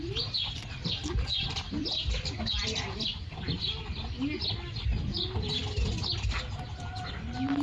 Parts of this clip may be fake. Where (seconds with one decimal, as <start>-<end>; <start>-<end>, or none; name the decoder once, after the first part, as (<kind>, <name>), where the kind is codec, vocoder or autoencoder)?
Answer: none